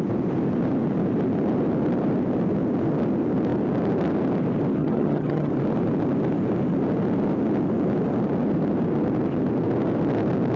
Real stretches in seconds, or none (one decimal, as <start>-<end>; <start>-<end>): 0.0-4.8; 5.5-10.6